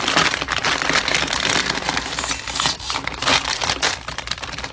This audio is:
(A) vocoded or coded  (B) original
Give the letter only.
B